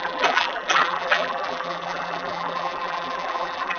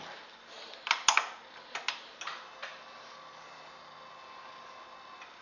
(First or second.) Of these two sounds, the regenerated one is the first